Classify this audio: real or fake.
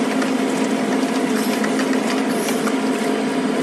real